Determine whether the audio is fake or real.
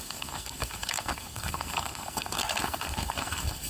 fake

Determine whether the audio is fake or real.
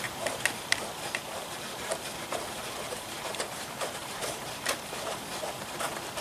fake